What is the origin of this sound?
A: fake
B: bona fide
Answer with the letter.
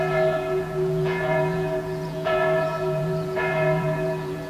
A